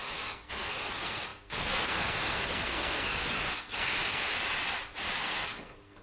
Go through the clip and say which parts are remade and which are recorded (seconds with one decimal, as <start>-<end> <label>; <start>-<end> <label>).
0.0-4.3 remade; 4.3-5.2 recorded; 5.2-6.0 remade